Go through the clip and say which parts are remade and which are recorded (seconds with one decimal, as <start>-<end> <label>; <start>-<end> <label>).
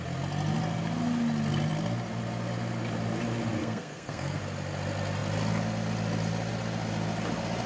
0.0-3.6 recorded; 3.6-4.4 remade; 4.4-7.7 recorded